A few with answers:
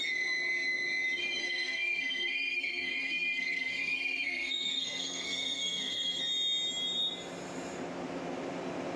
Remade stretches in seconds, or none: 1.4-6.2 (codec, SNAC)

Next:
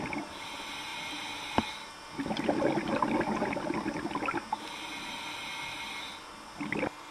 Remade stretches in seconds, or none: none

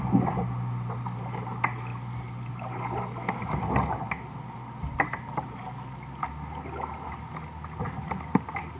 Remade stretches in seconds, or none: none

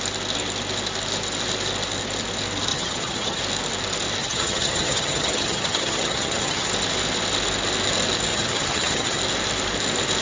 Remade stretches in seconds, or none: 2.7-3.4 (vocoder, HiFi-GAN); 4.2-6.7; 8.3-9.2